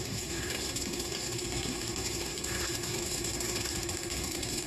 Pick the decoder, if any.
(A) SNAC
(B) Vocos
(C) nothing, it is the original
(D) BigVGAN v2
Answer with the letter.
A